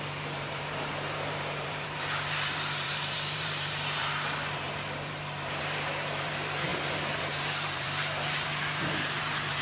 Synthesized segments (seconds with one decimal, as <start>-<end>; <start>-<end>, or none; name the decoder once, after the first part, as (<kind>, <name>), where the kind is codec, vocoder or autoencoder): 0.0-9.6 (vocoder, BigVGAN v2)